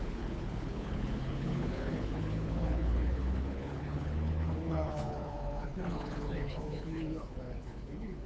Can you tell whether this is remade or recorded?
remade